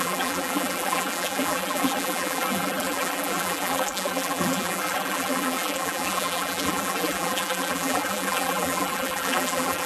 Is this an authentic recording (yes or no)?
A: no